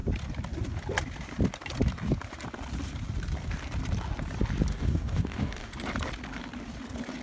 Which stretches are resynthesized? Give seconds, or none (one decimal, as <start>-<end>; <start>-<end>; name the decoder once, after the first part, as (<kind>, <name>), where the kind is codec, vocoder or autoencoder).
4.7-5.7 (codec, DAC)